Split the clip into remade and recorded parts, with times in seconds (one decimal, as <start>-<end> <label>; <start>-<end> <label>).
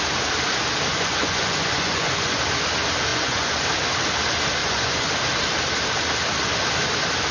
0.0-0.9 recorded; 0.9-2.4 remade; 2.4-3.1 recorded; 3.1-3.6 remade; 3.6-4.6 recorded; 4.6-5.1 remade; 5.1-7.3 recorded